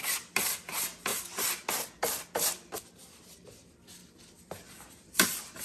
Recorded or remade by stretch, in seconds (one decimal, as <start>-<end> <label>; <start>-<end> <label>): 0.0-1.1 recorded; 1.1-2.8 remade; 2.8-4.0 recorded; 4.0-5.6 remade

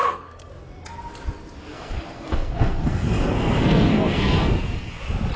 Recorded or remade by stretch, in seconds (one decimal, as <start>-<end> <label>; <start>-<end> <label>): 0.0-0.5 remade; 0.5-1.7 recorded; 1.7-4.9 remade; 4.9-5.4 recorded

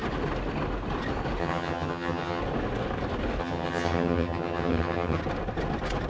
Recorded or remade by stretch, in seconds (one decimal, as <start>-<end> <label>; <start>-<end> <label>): 0.0-1.4 recorded; 1.4-2.4 remade; 2.4-3.4 recorded; 3.4-5.2 remade; 5.2-6.1 recorded

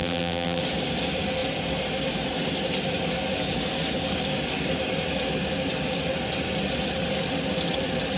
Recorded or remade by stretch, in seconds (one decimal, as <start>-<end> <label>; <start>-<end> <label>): 0.0-0.6 remade; 0.6-8.2 recorded